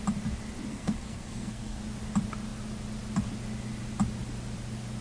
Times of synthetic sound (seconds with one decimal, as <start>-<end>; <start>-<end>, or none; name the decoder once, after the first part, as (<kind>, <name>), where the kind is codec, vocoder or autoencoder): 0.7-1.8 (codec, SNAC)